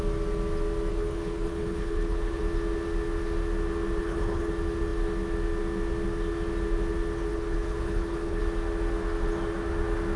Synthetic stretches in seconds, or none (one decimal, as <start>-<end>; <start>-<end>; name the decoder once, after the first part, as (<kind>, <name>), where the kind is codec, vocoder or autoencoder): 0.9-2.4 (codec, HILCodec); 4.0-4.5; 7.3-8.4